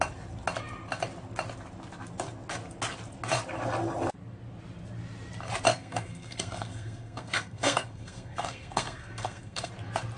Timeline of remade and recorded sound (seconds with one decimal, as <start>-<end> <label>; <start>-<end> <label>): 0.0-5.7 recorded; 5.7-9.7 remade; 9.7-10.2 recorded